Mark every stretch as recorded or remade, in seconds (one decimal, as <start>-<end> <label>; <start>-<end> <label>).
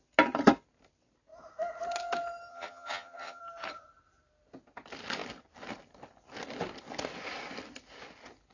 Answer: 0.0-2.5 recorded; 2.5-3.4 remade; 3.4-8.5 recorded